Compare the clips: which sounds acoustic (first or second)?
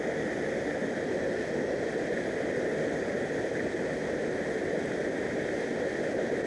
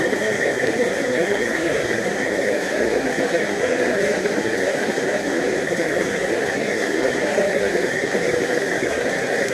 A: first